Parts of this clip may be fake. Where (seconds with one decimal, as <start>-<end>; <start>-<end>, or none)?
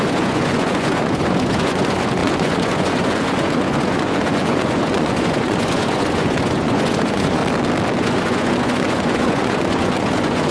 0.0-7.4; 8.0-10.5